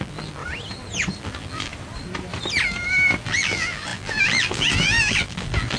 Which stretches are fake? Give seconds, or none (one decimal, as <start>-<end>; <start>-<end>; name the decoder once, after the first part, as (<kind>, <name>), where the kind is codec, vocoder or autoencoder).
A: 0.0-0.4 (vocoder, BigVGAN v2); 1.2-1.7; 3.1-5.8